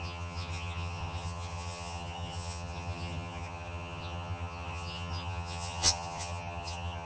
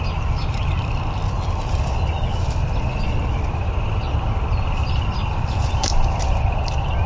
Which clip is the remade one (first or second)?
first